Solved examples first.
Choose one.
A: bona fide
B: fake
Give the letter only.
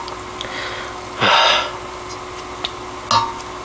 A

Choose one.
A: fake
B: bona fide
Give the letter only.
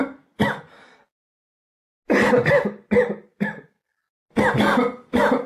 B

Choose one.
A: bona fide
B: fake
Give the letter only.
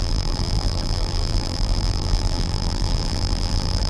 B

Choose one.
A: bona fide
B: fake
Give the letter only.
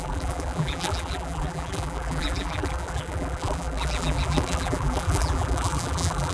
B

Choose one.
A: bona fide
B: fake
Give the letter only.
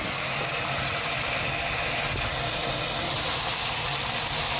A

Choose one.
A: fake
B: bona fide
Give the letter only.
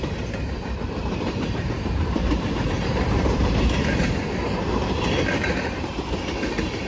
A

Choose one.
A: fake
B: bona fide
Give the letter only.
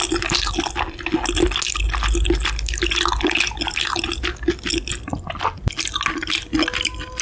B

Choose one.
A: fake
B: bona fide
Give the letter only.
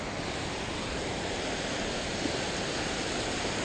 B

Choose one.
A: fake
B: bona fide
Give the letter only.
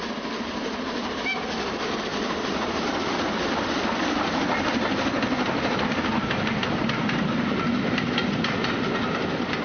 B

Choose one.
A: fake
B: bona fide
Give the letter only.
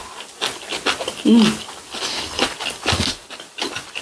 B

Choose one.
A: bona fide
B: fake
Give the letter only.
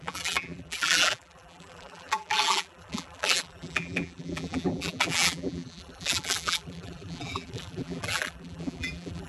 B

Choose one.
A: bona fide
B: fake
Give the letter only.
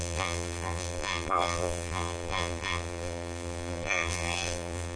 B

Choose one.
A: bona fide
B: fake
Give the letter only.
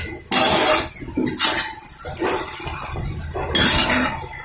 A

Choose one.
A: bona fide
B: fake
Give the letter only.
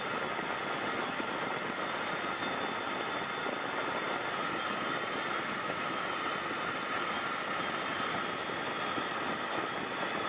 A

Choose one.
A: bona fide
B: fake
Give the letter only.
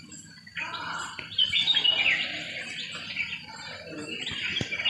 A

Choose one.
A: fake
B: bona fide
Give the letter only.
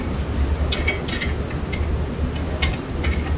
B